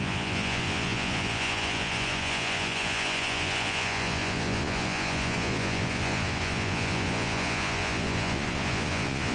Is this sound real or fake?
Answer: fake